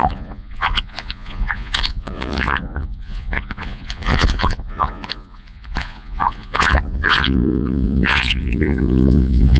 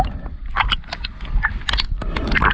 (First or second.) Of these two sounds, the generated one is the first